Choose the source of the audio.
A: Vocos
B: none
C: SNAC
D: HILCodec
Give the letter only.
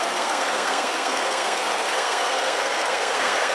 C